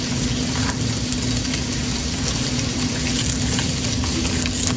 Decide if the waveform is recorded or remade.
recorded